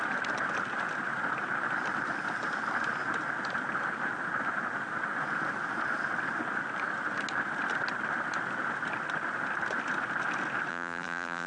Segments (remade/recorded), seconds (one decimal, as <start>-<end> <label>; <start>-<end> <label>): 0.0-10.7 recorded; 10.7-11.5 remade